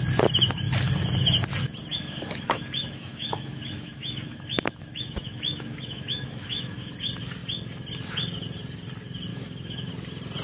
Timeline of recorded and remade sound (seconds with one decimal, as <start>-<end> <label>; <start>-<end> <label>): 0.0-2.0 recorded; 2.0-6.9 remade; 6.9-9.3 recorded; 9.3-9.9 remade; 9.9-10.4 recorded